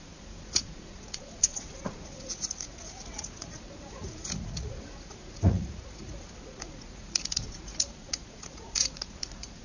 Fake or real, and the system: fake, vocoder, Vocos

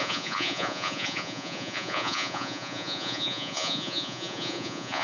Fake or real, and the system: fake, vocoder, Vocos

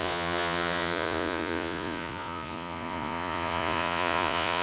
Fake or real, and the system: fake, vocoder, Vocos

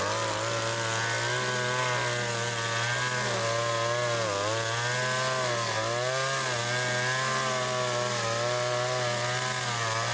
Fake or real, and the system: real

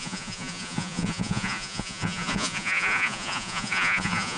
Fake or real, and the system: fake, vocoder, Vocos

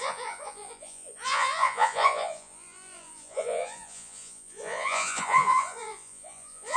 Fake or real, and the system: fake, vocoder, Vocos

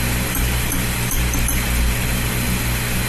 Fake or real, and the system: real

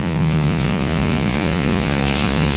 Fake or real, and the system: fake, vocoder, Vocos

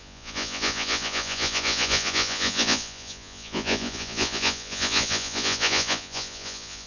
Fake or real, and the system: fake, vocoder, Vocos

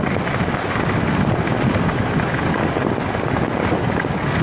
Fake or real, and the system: real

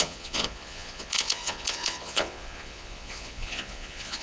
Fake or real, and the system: fake, vocoder, Vocos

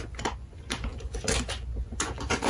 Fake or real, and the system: fake, vocoder, Vocos